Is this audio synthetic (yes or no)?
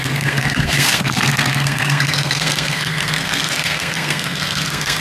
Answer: yes